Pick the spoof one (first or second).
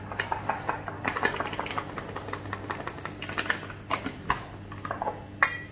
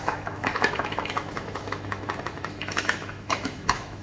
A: second